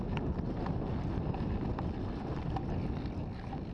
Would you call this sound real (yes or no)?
yes